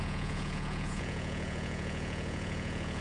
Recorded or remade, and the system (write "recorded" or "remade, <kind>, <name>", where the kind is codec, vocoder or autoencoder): remade, vocoder, Vocos